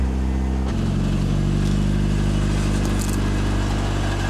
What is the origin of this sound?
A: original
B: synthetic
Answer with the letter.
A